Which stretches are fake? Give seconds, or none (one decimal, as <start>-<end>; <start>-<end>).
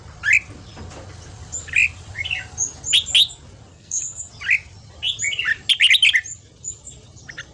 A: 3.7-4.3